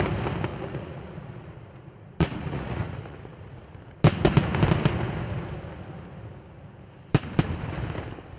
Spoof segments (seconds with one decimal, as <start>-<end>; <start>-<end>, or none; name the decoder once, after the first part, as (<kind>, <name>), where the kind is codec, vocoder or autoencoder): 0.5-3.7 (vocoder, Vocos)